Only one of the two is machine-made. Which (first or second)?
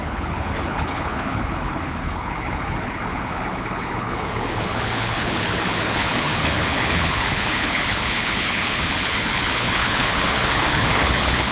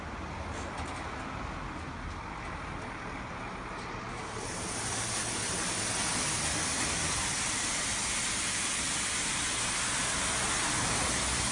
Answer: first